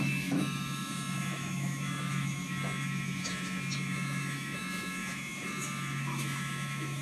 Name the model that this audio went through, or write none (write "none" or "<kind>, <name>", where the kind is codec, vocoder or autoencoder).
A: autoencoder, DAC-VAE